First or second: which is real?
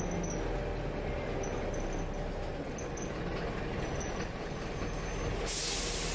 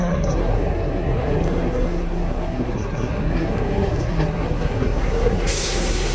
first